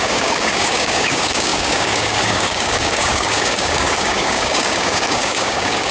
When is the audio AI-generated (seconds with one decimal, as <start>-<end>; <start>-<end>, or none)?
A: 0.0-5.9